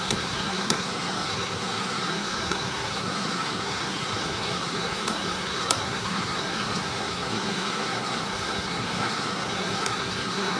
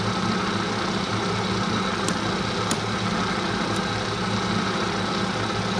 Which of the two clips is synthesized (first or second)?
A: first